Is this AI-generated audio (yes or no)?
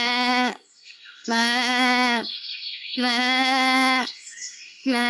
yes